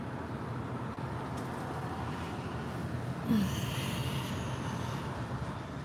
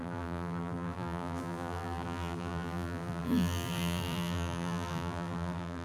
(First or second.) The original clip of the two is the first